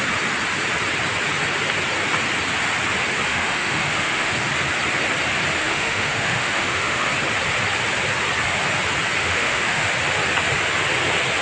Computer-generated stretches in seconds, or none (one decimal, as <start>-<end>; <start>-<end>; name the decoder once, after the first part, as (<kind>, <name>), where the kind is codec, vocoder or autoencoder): 3.3-4.3 (autoencoder, DAC-VAE); 5.6-7.1; 9.2-9.9